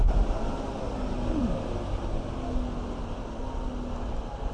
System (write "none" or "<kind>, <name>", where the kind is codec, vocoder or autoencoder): none